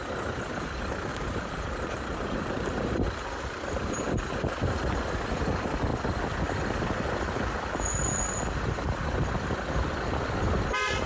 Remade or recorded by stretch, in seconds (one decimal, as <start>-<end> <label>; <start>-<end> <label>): 0.0-1.1 recorded; 1.1-5.1 remade; 5.1-11.1 recorded